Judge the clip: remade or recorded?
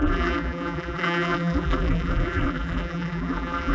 remade